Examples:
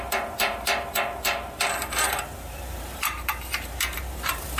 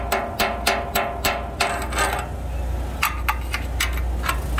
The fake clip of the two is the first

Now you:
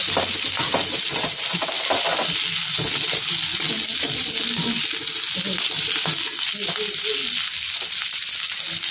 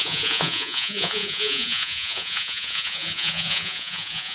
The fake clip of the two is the second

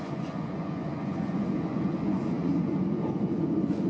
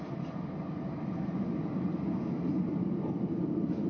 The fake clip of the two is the first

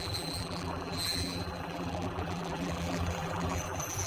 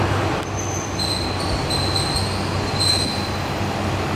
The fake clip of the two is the first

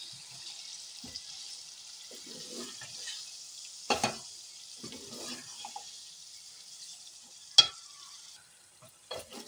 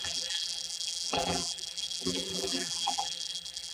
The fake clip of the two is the second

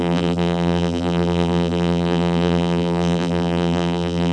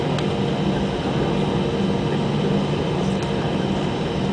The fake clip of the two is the first